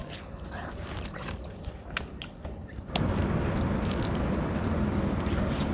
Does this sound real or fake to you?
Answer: real